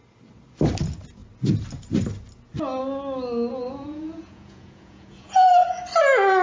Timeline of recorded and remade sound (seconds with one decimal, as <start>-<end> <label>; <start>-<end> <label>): 0.0-3.5 recorded; 3.5-5.5 remade; 5.5-6.4 recorded